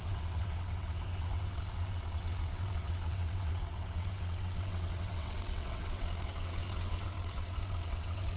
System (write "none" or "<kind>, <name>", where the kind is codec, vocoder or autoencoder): vocoder, WaveNeXt